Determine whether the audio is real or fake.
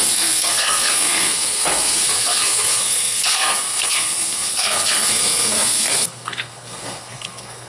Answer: fake